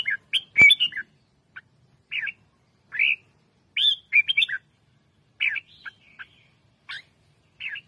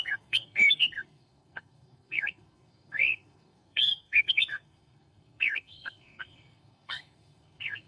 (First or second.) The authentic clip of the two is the first